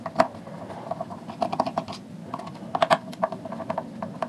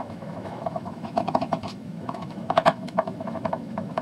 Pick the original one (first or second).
first